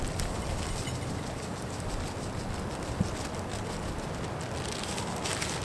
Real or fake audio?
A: real